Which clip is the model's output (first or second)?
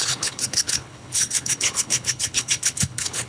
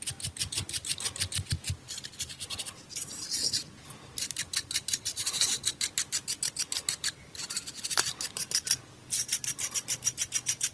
first